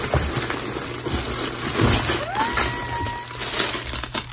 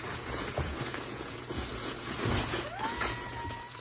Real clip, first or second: first